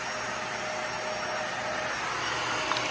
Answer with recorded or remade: recorded